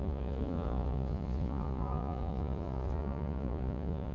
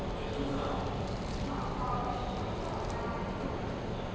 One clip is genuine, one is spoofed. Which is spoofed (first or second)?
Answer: first